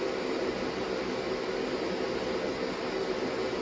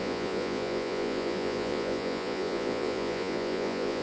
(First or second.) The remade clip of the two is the second